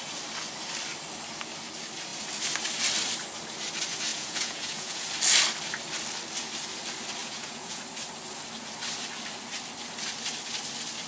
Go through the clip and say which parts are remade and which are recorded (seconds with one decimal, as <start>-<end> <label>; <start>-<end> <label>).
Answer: 0.0-4.1 recorded; 4.1-5.0 remade; 5.0-7.2 recorded; 7.2-7.8 remade; 7.8-11.1 recorded